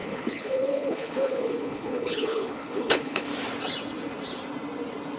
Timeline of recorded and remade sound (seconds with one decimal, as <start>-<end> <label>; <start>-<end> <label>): 0.0-3.3 remade; 3.3-5.2 recorded